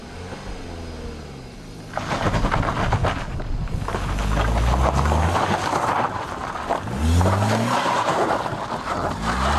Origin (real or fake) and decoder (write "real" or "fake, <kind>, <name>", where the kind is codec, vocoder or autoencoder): real